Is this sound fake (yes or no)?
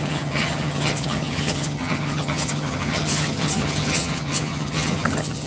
yes